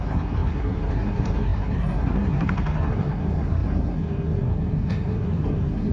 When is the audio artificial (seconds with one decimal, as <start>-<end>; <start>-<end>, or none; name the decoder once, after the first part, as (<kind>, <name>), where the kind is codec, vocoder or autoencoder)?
0.0-5.9 (codec, SNAC)